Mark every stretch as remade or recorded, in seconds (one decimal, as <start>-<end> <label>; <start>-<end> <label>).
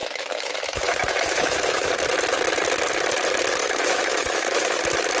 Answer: 0.0-1.9 remade; 1.9-3.6 recorded; 3.6-4.8 remade; 4.8-5.2 recorded